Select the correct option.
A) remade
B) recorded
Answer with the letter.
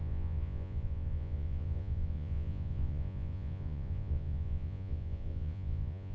A